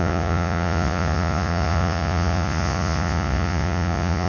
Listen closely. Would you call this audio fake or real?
fake